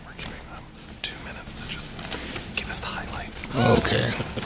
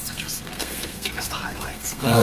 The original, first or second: first